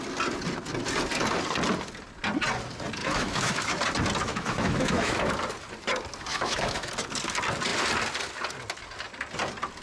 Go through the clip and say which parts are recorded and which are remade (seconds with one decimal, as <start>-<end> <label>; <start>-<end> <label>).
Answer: 0.0-3.0 recorded; 3.0-3.8 remade; 3.8-4.3 recorded; 4.3-5.3 remade; 5.3-6.3 recorded; 6.3-6.9 remade; 6.9-9.8 recorded